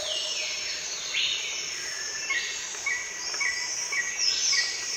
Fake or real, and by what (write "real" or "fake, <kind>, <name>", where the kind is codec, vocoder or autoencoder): real